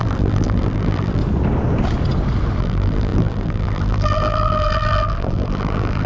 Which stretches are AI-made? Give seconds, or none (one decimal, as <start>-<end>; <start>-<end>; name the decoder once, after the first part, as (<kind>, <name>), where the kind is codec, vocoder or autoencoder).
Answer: 0.0-1.2 (vocoder, BigVGAN v2); 2.6-6.1